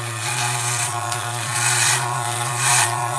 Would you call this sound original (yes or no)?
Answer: no